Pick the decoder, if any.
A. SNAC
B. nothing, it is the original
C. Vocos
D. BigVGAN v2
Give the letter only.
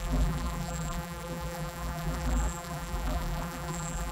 D